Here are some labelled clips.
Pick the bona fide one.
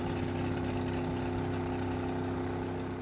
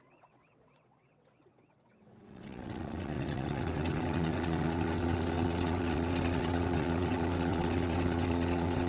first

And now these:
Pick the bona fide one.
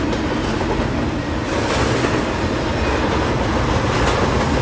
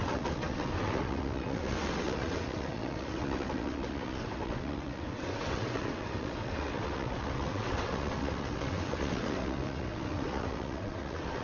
first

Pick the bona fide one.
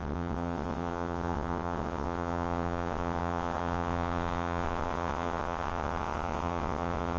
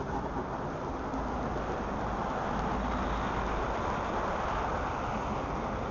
second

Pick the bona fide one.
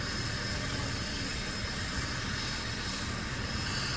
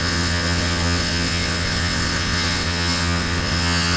first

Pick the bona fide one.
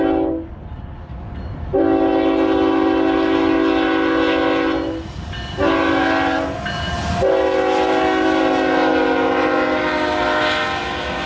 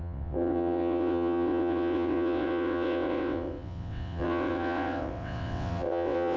first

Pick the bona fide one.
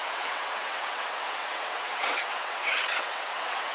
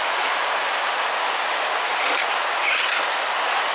second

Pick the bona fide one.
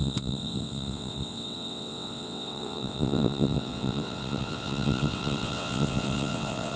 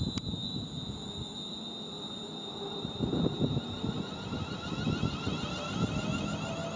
second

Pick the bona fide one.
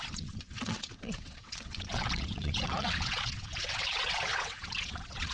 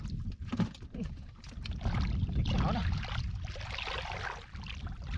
second